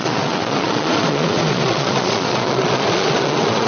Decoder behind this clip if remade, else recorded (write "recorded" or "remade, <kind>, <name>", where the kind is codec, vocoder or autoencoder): remade, vocoder, Vocos